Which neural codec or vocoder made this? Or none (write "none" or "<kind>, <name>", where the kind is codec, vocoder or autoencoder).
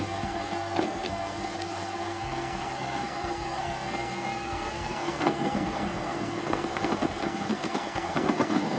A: codec, SNAC